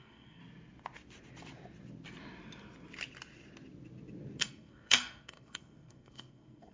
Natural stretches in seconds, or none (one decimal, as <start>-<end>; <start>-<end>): 0.4-4.4